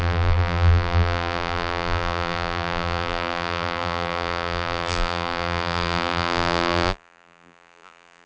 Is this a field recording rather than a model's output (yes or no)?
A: no